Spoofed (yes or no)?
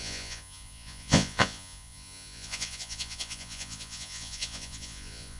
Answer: yes